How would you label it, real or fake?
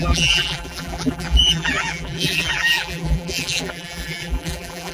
fake